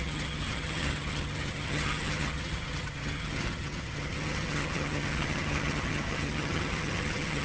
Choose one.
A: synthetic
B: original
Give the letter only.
A